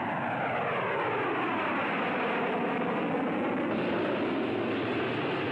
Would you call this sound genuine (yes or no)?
yes